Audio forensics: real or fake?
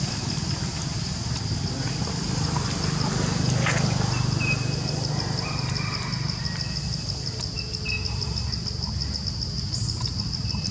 real